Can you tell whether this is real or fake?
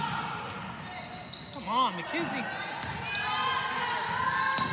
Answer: real